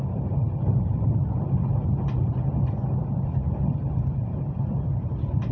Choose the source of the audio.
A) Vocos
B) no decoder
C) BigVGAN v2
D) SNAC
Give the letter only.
B